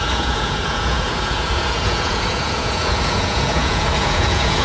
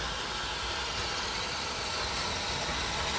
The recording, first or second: second